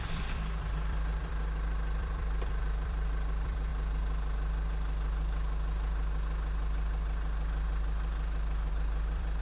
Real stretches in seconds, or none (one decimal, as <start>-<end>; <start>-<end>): 3.7-8.7